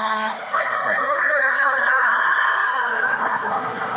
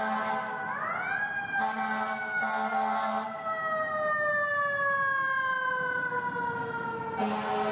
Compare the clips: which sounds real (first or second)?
second